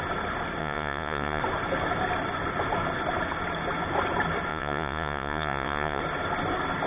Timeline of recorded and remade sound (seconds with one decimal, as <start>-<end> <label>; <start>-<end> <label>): 0.0-0.6 recorded; 0.6-1.4 remade; 1.4-4.5 recorded; 4.5-6.0 remade; 6.0-6.9 recorded